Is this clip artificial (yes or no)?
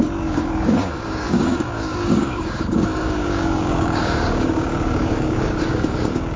yes